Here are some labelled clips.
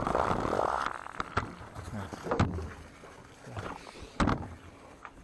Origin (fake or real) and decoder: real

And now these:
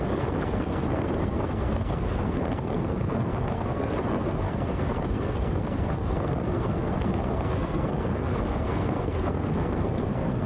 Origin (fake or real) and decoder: fake, codec, SNAC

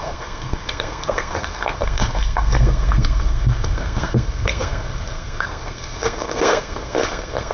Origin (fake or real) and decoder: fake, codec, SNAC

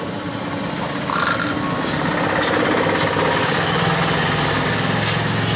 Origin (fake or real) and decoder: real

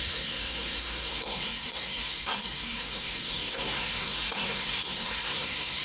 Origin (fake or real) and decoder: fake, codec, SNAC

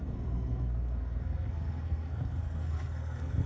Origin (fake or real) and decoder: fake, codec, SNAC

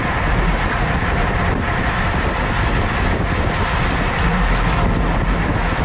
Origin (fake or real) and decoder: real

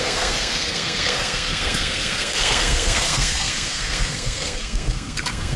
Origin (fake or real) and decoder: fake, codec, SNAC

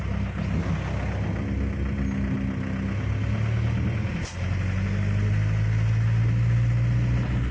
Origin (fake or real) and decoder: real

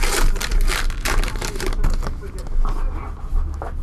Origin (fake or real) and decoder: real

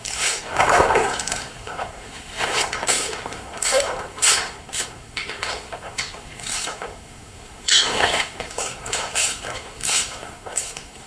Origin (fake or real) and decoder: fake, codec, SNAC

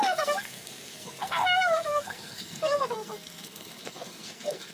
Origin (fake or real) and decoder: fake, codec, SNAC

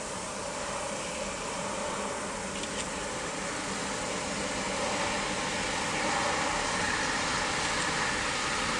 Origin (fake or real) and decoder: real